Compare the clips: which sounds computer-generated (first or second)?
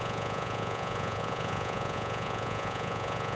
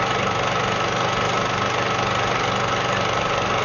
first